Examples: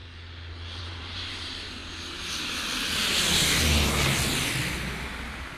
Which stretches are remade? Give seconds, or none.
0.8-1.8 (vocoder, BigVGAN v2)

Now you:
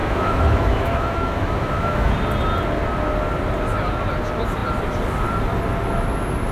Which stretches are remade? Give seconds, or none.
0.0-2.1 (autoencoder, DAC-VAE)

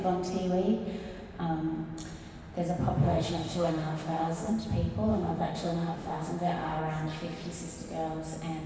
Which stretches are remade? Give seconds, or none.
3.0-4.5 (autoencoder, DAC-VAE); 5.1-6.8

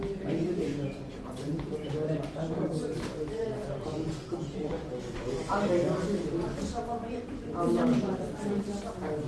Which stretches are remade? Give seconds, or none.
0.7-1.7 (vocoder, Vocos)

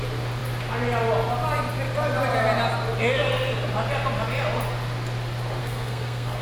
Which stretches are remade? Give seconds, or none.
5.6-6.4 (codec, SNAC)

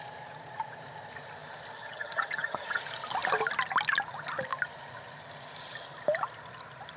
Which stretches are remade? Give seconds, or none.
1.8-2.8 (vocoder, HiFi-GAN)

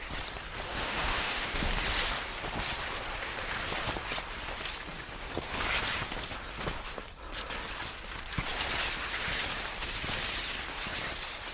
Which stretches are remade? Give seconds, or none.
0.7-1.7 (autoencoder, DAC-VAE)